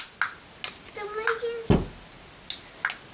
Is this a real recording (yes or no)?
yes